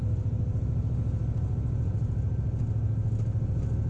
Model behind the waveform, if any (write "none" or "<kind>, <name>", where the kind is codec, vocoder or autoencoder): none